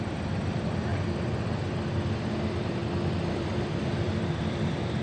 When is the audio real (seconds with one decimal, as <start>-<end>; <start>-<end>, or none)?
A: 0.9-1.7; 2.8-3.3